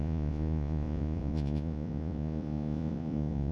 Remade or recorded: remade